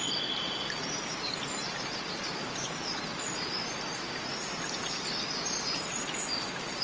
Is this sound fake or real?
real